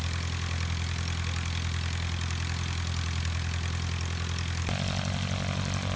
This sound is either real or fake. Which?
real